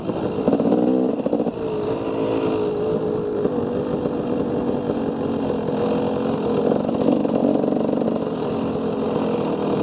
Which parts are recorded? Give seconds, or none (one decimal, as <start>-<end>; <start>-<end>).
0.0-9.8